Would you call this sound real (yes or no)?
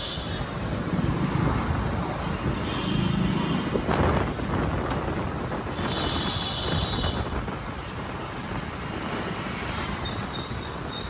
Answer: yes